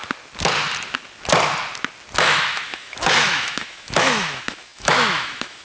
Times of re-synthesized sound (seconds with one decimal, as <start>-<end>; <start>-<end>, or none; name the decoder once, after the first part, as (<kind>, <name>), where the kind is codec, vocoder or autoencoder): 2.2-5.6 (autoencoder, DAC-VAE)